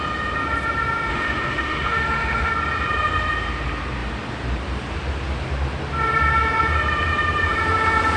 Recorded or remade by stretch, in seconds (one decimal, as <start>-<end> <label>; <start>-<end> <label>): 0.0-1.1 recorded; 1.1-2.5 remade; 2.5-8.2 recorded